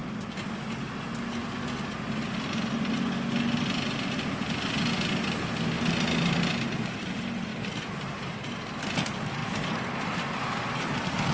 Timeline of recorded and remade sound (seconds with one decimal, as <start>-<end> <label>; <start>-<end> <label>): 0.0-7.5 recorded; 7.5-8.5 remade; 8.5-11.3 recorded